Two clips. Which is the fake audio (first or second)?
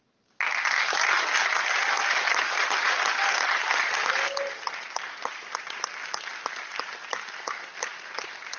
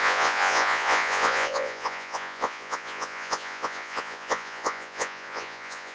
second